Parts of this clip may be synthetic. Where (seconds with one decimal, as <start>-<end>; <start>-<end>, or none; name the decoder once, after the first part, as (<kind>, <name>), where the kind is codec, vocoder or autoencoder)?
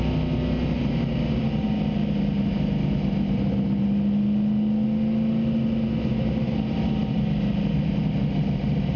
none